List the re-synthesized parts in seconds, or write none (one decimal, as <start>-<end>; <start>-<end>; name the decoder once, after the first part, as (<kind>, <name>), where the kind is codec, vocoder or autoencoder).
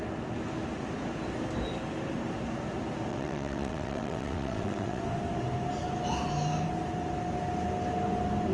3.1-5.0 (vocoder, WaveNeXt)